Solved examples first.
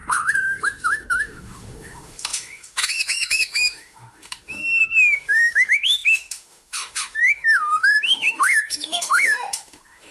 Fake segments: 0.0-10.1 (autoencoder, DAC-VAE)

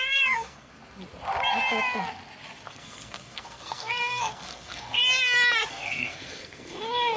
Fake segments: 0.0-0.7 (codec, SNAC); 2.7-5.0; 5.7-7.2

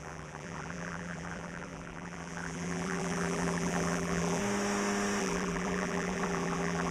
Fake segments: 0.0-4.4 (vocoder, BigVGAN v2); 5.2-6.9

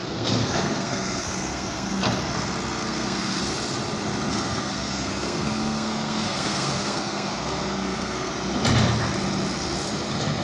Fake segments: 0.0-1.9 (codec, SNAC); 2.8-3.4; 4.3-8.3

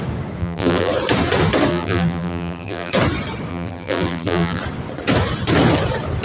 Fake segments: 0.4-0.9 (vocoder, BigVGAN v2); 1.7-2.9; 3.5-4.6

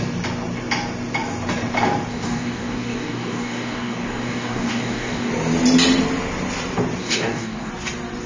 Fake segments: 2.1-5.3 (codec, DAC); 7.0-7.7